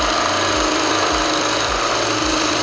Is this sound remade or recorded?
remade